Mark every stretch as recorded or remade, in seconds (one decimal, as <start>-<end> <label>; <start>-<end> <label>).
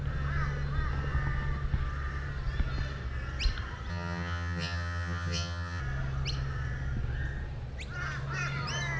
0.0-3.9 recorded; 3.9-5.8 remade; 5.8-9.0 recorded